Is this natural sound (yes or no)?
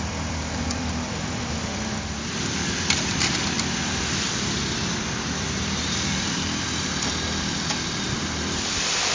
no